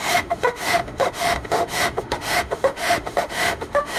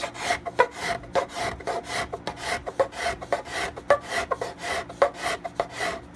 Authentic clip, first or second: second